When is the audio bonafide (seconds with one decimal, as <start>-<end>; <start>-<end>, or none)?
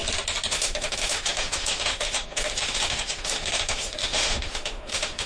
0.0-0.5